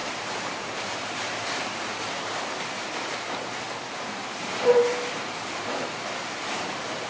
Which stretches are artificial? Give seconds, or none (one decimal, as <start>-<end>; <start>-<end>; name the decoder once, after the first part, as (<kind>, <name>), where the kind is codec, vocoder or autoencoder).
0.0-7.1 (vocoder, BigVGAN v2)